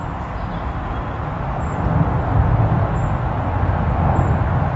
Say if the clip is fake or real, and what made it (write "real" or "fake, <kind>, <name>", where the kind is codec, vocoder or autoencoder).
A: real